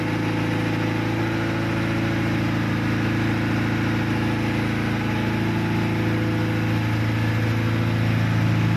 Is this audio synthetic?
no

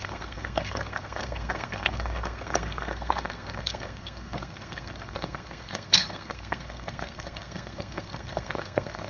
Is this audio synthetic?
yes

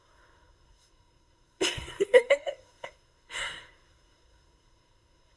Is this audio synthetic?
yes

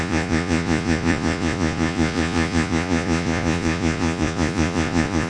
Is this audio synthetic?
yes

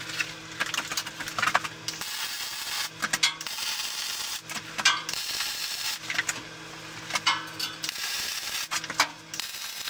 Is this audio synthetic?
no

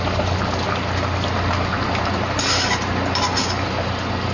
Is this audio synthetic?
no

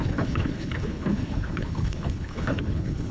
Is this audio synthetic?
yes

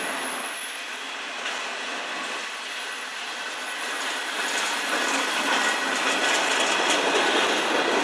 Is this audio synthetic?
no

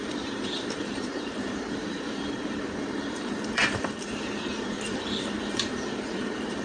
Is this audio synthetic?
yes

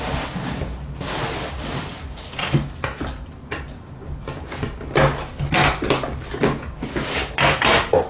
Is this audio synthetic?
no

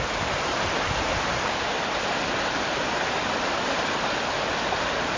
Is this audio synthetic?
no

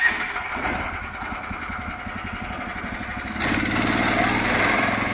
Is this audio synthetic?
no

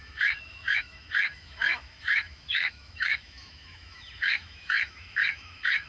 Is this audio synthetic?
yes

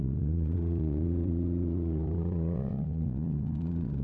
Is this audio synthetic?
yes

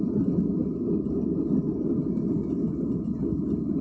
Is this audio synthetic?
no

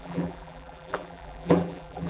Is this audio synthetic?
yes